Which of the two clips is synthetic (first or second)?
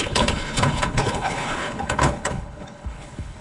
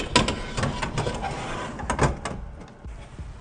first